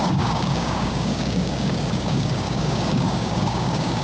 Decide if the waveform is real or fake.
fake